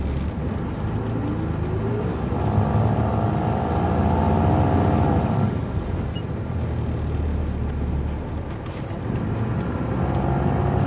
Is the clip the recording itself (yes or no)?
yes